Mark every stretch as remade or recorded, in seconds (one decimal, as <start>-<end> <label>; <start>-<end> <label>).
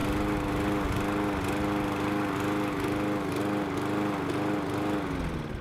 0.0-5.6 recorded